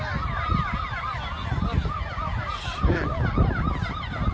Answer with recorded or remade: recorded